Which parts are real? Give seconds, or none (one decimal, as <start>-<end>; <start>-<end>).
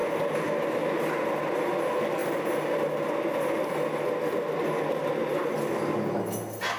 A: 0.0-6.8